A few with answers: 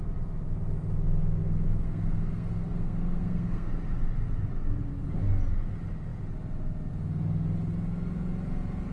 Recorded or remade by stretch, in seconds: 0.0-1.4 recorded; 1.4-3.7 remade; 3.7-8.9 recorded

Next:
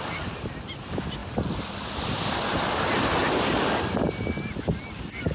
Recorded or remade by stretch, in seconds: 0.0-1.2 recorded; 1.2-2.0 remade; 2.0-3.2 recorded; 3.2-4.2 remade; 4.2-5.3 recorded

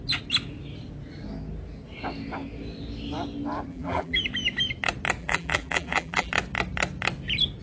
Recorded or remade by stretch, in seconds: 0.0-3.7 recorded; 3.7-4.2 remade; 4.2-5.2 recorded; 5.2-6.3 remade; 6.3-7.6 recorded

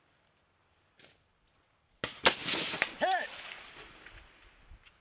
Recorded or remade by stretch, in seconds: 0.0-5.0 recorded